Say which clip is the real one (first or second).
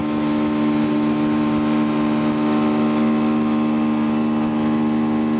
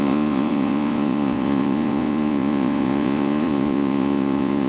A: first